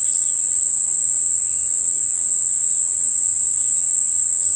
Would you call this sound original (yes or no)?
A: no